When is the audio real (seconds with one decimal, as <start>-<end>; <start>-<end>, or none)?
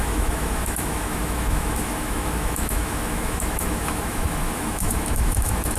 none